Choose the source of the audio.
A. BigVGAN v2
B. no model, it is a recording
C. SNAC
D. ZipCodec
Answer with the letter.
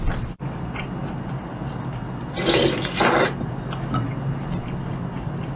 B